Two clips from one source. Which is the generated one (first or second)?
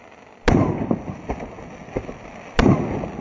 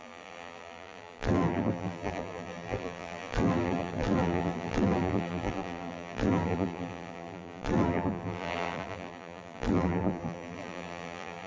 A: second